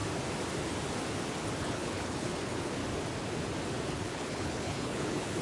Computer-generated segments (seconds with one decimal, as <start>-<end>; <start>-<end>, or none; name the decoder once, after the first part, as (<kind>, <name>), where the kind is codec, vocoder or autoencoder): 1.6-2.8 (codec, HILCodec); 3.9-5.4